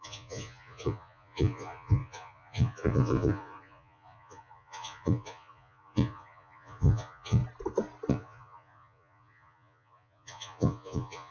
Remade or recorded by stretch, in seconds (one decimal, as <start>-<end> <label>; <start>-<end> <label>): 0.0-7.4 remade; 7.4-8.1 recorded; 8.1-11.3 remade